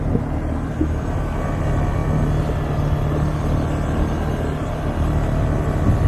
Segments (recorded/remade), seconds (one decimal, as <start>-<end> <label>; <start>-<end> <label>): 0.0-6.1 recorded